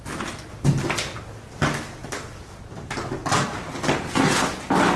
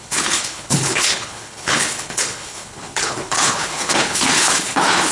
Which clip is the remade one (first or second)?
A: second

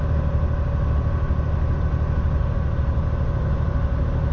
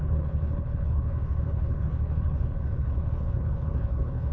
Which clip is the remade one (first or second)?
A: second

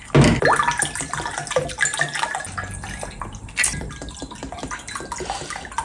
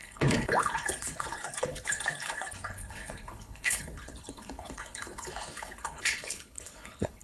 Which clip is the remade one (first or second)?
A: second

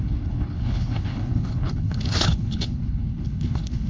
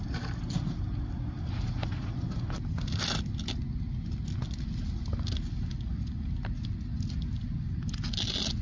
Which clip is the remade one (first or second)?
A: first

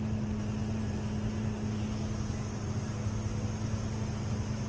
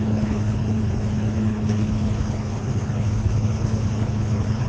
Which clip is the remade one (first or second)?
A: second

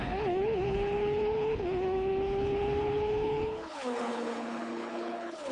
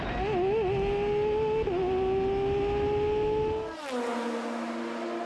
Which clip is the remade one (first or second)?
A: first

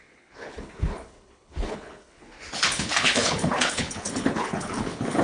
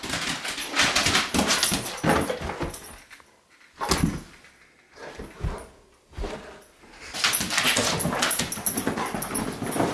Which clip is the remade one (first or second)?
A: first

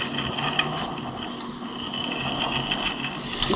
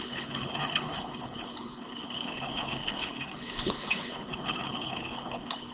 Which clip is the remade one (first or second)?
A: second